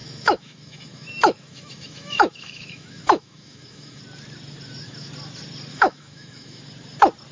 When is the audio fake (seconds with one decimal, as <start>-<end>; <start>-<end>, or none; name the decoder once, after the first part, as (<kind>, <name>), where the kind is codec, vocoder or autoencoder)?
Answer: 0.0-4.0 (autoencoder, DAC-VAE); 5.7-6.6